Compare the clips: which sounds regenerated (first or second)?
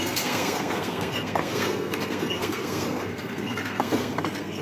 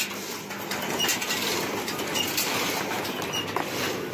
first